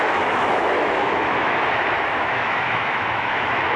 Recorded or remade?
remade